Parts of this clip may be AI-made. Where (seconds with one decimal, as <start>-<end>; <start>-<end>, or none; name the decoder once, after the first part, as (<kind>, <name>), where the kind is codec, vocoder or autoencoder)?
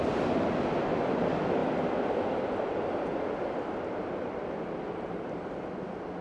none